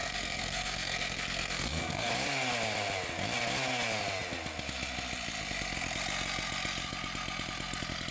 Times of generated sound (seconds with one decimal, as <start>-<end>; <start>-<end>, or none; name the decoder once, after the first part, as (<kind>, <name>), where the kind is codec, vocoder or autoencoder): 0.0-2.1 (codec, SNAC)